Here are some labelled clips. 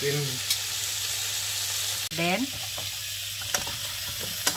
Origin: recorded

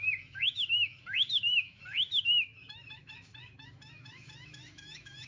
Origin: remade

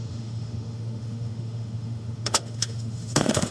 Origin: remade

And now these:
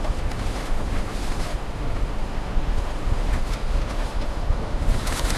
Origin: remade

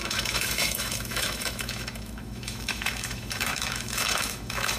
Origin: remade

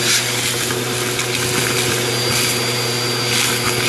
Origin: recorded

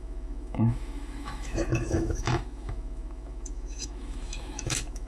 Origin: remade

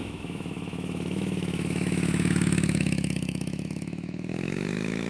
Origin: remade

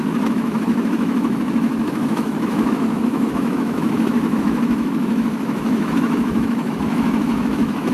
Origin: remade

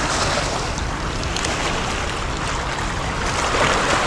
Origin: recorded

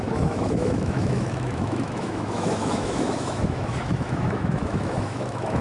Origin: remade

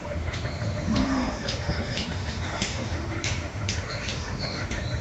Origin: remade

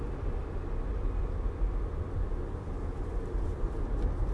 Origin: recorded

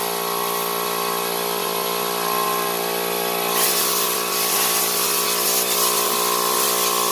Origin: recorded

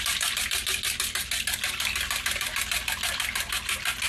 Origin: recorded